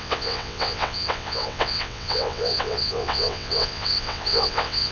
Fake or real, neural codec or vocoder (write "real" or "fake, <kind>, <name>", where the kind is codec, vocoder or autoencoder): fake, vocoder, WaveNeXt